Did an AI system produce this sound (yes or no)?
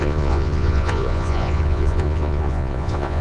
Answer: yes